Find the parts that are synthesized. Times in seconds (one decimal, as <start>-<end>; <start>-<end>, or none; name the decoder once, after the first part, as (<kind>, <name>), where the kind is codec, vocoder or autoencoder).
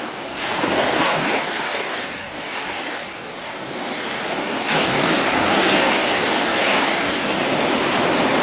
0.0-7.4 (codec, DAC)